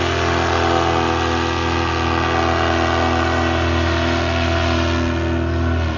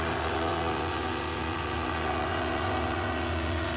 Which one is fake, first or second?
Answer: second